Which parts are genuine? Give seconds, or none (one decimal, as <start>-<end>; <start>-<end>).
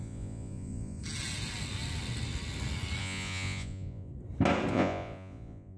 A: 1.0-3.0; 4.1-4.7